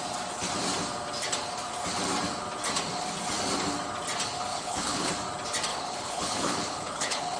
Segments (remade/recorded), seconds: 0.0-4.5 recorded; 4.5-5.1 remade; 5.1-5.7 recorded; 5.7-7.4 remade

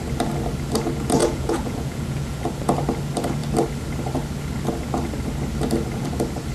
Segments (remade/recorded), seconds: 0.0-1.2 recorded; 1.2-2.4 remade; 2.4-6.5 recorded

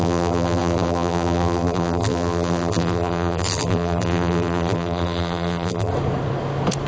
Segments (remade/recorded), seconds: 0.0-5.9 remade; 5.9-6.9 recorded

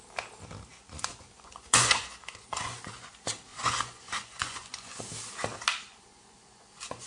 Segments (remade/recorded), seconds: 0.0-0.7 recorded; 0.7-3.1 remade; 3.1-3.5 recorded; 3.5-5.0 remade; 5.0-5.9 recorded; 5.9-7.1 remade

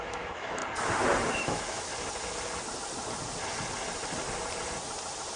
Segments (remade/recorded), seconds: 0.0-0.6 remade; 0.6-1.4 recorded; 1.4-1.9 remade; 1.9-5.4 recorded

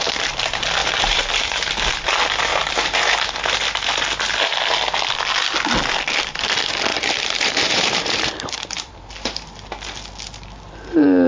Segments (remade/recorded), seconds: 0.0-0.8 recorded; 0.8-1.7 remade; 1.7-2.5 recorded; 2.5-3.5 remade; 3.5-6.9 recorded; 6.9-9.1 remade; 9.1-11.3 recorded

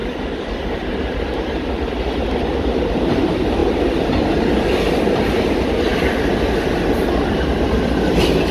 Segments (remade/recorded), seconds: 0.0-8.5 recorded